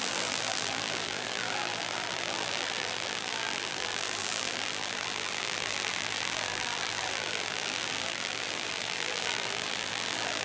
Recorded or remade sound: remade